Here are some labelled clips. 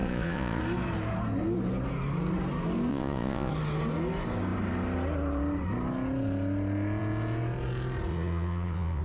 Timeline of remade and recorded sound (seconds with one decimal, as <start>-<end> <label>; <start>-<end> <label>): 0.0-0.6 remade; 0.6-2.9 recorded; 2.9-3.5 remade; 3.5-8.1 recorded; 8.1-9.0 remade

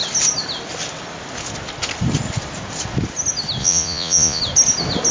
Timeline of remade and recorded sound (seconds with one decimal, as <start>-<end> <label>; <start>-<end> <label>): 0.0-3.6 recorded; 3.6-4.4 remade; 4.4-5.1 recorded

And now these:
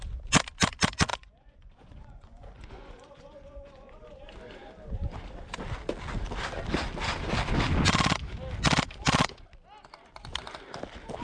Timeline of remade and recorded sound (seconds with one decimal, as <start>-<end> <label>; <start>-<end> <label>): 0.0-1.1 recorded; 1.1-4.0 remade; 4.0-11.2 recorded

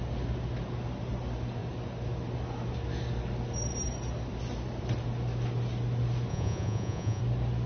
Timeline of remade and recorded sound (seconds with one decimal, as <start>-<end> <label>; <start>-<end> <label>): 0.0-6.3 recorded; 6.3-7.2 remade; 7.2-7.7 recorded

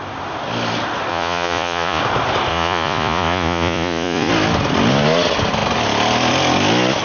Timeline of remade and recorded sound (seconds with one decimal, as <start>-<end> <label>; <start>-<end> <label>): 0.0-1.1 recorded; 1.1-2.0 remade; 2.0-2.5 recorded; 2.5-4.3 remade; 4.3-7.0 recorded

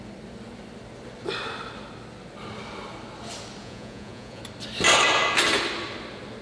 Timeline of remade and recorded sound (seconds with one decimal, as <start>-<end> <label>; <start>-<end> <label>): 0.0-3.6 recorded; 3.6-4.4 remade; 4.4-6.4 recorded